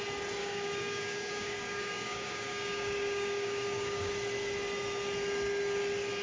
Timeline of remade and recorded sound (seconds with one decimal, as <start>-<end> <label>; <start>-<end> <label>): 0.0-0.4 recorded; 0.4-4.1 remade; 4.1-6.2 recorded